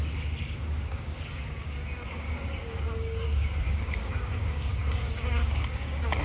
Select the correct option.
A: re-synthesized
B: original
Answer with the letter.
A